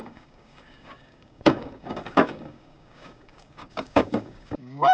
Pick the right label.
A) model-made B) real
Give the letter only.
A